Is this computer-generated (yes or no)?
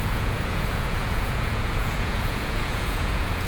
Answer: yes